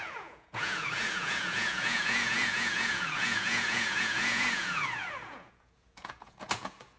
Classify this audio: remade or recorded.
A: remade